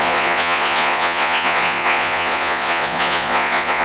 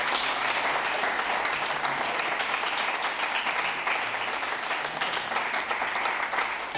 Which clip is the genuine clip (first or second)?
second